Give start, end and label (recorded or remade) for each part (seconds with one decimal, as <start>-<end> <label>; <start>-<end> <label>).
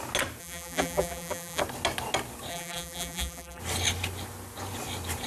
0.0-0.4 recorded; 0.4-1.6 remade; 1.6-2.5 recorded; 2.5-3.6 remade; 3.6-5.3 recorded